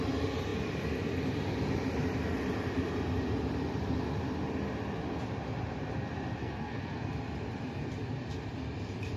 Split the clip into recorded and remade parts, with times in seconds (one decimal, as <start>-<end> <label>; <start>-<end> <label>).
0.0-6.4 recorded; 6.4-7.1 remade; 7.1-9.2 recorded